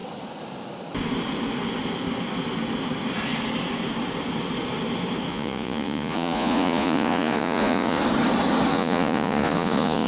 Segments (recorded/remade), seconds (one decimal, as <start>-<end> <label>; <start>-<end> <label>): 0.0-5.3 recorded; 5.3-8.0 remade; 8.0-8.7 recorded; 8.7-10.1 remade